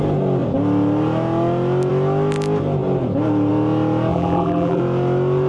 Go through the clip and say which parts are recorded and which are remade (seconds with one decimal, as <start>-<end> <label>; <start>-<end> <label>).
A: 0.0-4.1 recorded; 4.1-4.8 remade; 4.8-5.5 recorded